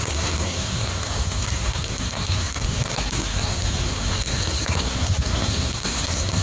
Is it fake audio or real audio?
fake